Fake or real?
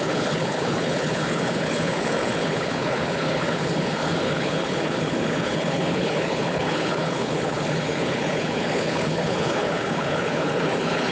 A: fake